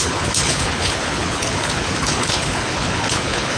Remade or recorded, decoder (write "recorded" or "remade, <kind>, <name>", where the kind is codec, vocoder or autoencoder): remade, codec, HILCodec